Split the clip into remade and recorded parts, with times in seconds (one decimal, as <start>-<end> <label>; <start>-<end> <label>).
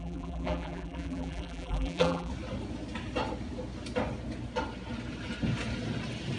0.0-2.3 remade; 2.3-6.4 recorded